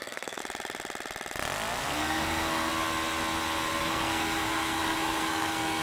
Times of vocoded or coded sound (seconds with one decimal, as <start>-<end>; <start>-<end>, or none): 0.0-0.4; 1.8-2.7; 3.8-5.8